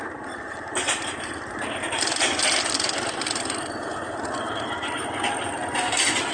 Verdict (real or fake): real